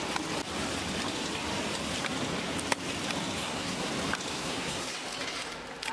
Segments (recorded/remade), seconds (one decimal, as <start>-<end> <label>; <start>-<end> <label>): 0.0-3.4 recorded; 3.4-3.9 remade; 3.9-4.3 recorded; 4.3-4.9 remade; 4.9-5.9 recorded